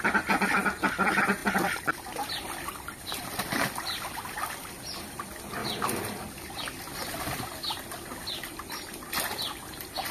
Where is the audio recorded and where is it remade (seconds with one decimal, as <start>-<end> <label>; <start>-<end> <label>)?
0.0-1.4 recorded; 1.4-4.7 remade; 4.7-5.6 recorded; 5.6-7.0 remade; 7.0-10.1 recorded